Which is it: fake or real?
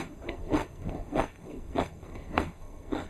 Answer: fake